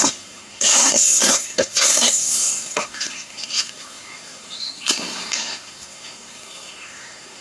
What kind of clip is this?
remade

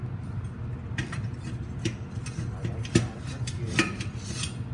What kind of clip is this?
recorded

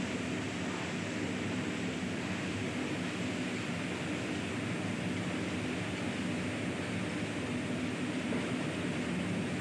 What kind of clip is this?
recorded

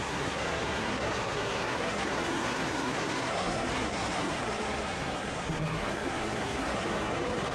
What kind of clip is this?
remade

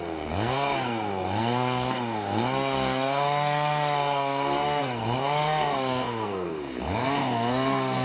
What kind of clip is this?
remade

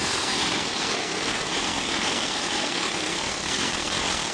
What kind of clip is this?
remade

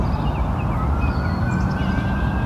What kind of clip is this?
recorded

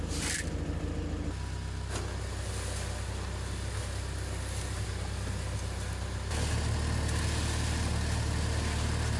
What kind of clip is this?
recorded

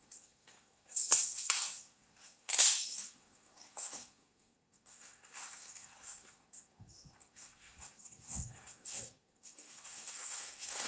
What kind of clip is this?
remade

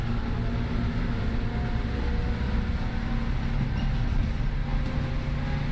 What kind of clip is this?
recorded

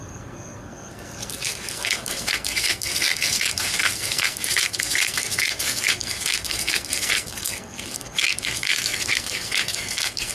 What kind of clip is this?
remade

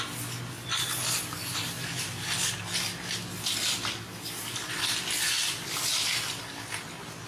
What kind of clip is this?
recorded